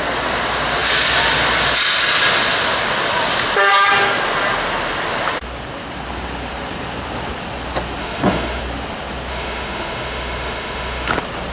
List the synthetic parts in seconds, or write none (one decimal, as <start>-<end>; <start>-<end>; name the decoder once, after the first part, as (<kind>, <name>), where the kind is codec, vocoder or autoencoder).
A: 8.0-8.6 (autoencoder, DAC-VAE); 9.3-11.1